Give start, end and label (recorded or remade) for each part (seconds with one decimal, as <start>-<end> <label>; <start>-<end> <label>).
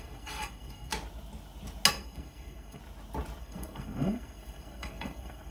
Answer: 0.0-0.9 remade; 0.9-1.9 recorded; 1.9-2.8 remade; 2.8-3.4 recorded; 3.4-5.5 remade